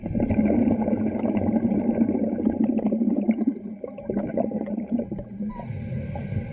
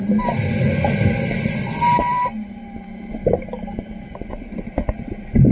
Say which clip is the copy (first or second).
first